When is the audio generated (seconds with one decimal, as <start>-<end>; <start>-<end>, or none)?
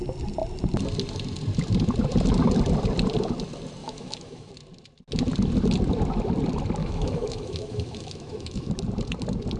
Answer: 3.8-4.5; 6.8-8.7